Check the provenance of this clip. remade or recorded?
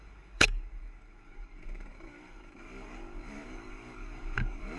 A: remade